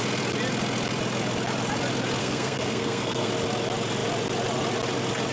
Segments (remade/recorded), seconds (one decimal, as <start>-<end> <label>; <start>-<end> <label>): 0.0-2.2 recorded; 2.2-3.3 remade; 3.3-5.3 recorded

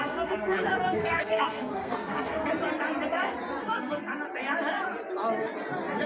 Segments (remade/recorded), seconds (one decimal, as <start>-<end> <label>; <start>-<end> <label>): 0.0-2.5 remade; 2.5-3.6 recorded; 3.6-4.1 remade; 4.1-6.1 recorded